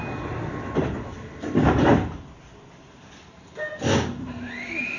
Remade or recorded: recorded